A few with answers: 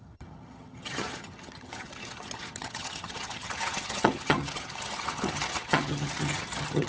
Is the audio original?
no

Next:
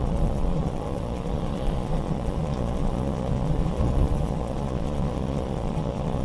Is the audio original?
no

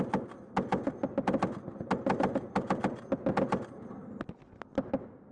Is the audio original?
yes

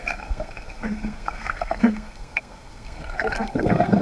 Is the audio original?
no